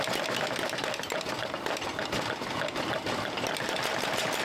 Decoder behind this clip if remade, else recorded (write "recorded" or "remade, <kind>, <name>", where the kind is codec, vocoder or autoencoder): recorded